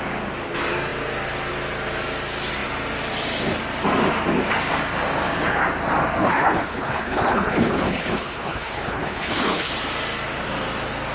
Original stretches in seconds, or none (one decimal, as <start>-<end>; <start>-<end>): 0.0-6.2; 9.7-11.1